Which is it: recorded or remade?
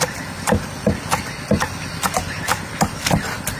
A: recorded